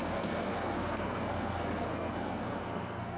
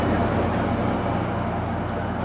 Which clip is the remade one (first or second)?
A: first